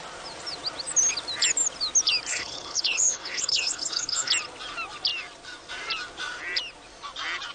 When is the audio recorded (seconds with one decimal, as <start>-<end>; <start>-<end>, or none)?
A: 0.0-2.3; 4.3-7.5